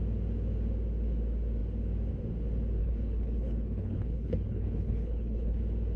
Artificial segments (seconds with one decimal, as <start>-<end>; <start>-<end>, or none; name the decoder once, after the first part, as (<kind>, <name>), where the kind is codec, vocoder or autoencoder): 2.8-5.6 (codec, HILCodec)